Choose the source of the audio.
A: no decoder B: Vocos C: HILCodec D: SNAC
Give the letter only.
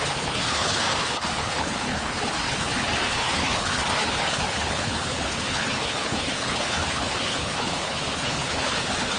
C